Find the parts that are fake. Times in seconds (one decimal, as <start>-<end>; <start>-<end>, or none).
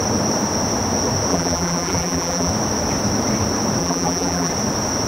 1.3-2.5; 3.8-4.5